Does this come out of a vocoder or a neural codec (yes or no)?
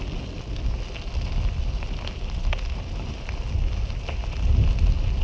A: no